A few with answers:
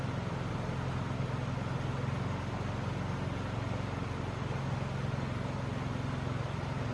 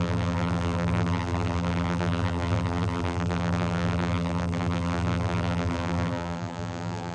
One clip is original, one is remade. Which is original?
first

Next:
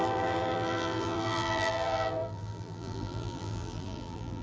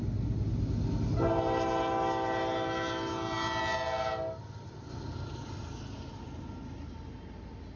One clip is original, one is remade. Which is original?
second